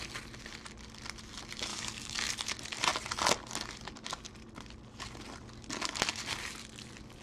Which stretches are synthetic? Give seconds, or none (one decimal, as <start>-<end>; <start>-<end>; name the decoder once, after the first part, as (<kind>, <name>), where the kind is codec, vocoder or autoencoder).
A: 1.7-2.3 (codec, DAC)